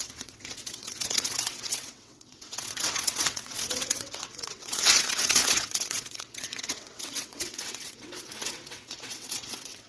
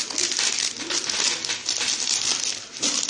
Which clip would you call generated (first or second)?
first